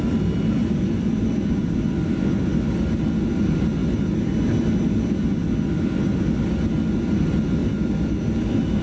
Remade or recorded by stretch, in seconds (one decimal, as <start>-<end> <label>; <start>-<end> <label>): 0.0-8.8 recorded